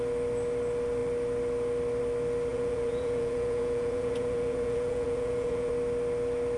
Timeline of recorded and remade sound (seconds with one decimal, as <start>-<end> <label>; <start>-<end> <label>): 0.0-2.5 recorded; 2.5-5.7 remade; 5.7-6.6 recorded